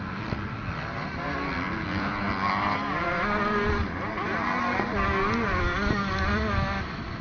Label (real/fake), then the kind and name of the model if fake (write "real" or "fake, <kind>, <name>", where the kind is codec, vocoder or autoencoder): real